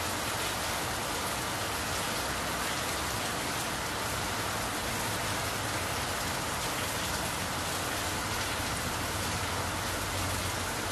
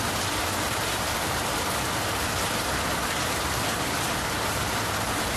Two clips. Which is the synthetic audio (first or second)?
second